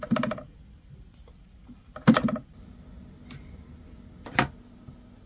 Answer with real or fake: real